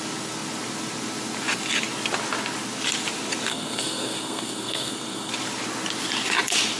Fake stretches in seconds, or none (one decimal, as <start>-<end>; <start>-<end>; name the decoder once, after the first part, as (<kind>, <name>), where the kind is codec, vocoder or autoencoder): 3.5-5.3 (codec, SNAC)